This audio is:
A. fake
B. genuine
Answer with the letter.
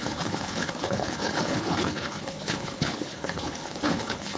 A